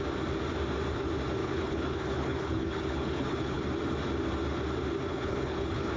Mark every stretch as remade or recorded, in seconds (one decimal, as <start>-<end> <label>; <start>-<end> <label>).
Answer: 0.0-1.4 recorded; 1.4-3.6 remade; 3.6-5.1 recorded; 5.1-6.0 remade